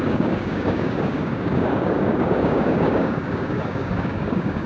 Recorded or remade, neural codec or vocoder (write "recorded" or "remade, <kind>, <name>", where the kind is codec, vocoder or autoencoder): remade, codec, DAC